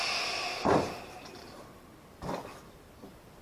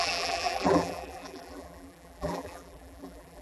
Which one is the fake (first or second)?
second